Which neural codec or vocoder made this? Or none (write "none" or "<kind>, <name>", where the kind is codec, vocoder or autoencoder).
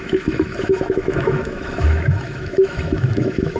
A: autoencoder, DAC-VAE